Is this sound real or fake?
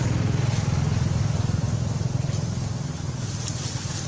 real